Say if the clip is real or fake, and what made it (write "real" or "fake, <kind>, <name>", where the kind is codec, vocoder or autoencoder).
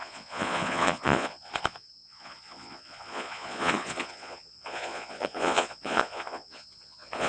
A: fake, vocoder, Vocos